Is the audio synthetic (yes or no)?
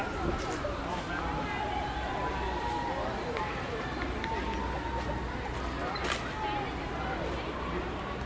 no